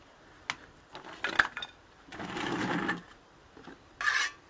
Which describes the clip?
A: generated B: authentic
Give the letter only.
B